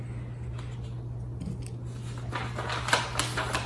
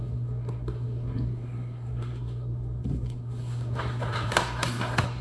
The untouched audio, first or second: first